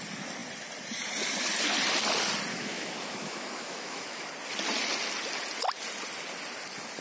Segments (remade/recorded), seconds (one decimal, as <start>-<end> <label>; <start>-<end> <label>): 0.0-2.5 recorded; 2.5-4.3 remade; 4.3-7.0 recorded